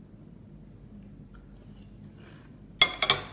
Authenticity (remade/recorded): recorded